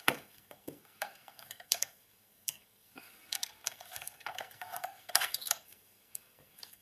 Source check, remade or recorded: remade